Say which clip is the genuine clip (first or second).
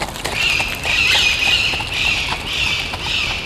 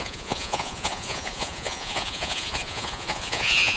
first